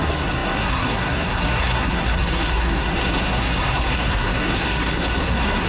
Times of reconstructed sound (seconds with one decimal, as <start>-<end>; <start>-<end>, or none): 0.0-5.7